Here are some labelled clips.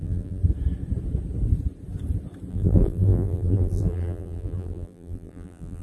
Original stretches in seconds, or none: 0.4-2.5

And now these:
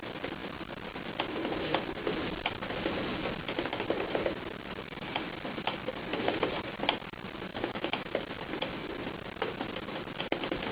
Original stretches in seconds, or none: 0.0-7.5; 8.1-10.7